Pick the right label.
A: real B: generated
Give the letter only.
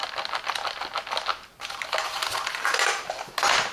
A